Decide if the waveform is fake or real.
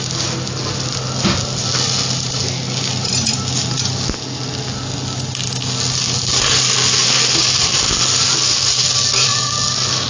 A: real